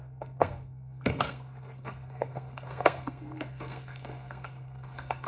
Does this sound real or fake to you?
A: fake